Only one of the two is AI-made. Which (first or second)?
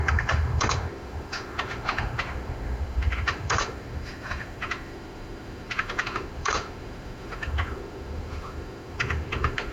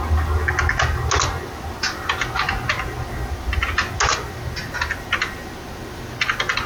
first